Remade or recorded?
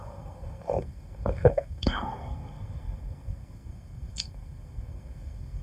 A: remade